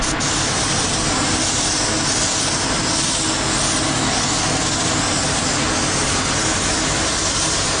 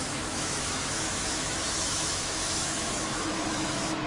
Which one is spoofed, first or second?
second